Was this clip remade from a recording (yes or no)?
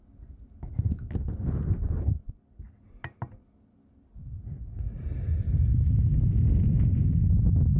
no